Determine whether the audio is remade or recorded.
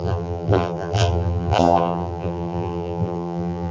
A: remade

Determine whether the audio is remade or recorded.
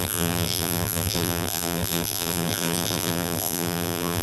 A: remade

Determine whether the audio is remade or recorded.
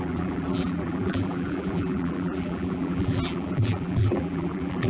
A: remade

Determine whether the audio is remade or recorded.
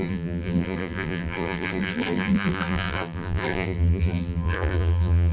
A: remade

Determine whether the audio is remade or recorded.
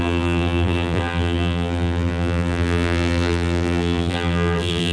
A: remade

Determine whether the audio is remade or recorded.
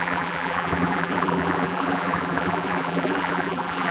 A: remade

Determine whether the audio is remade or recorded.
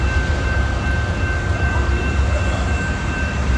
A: remade